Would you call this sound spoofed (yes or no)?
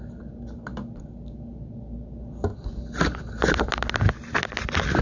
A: no